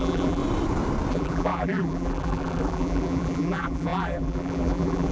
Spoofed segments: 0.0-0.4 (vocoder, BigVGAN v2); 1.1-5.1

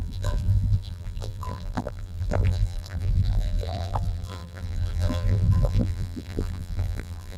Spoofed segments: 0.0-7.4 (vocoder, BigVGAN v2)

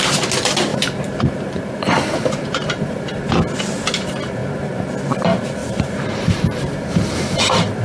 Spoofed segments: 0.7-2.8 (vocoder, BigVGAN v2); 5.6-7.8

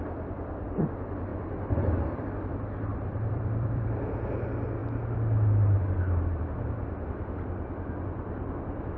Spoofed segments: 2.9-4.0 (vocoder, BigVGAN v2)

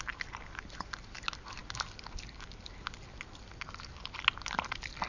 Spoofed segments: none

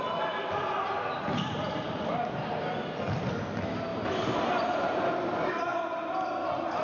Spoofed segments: 3.9-5.1 (vocoder, BigVGAN v2)

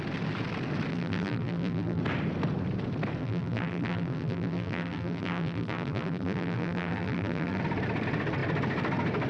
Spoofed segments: 0.9-2.0 (vocoder, BigVGAN v2); 3.2-7.6

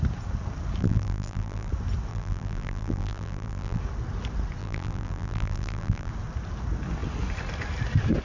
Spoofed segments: 0.8-1.7 (vocoder, BigVGAN v2); 2.1-3.8; 4.6-6.1